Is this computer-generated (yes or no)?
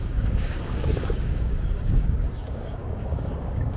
yes